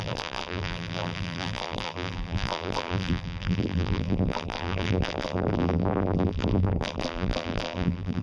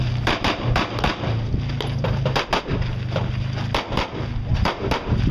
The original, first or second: second